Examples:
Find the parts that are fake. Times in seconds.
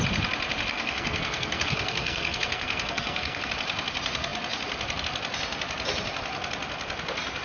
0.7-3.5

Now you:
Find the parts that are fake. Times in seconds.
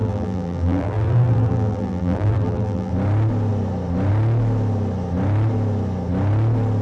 0.0-2.9